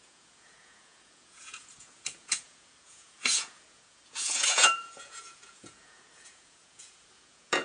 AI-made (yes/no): yes